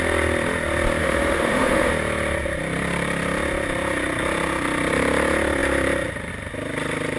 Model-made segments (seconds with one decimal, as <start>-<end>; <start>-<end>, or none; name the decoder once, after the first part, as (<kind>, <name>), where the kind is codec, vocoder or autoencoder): 1.0-1.9 (autoencoder, DAC-VAE)